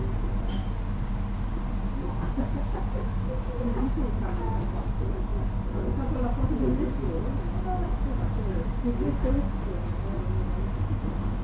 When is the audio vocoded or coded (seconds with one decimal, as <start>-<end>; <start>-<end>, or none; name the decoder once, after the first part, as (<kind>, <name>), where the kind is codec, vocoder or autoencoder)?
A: none